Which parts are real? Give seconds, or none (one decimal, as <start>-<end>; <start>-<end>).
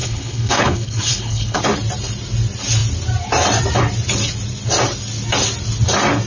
1.6-6.3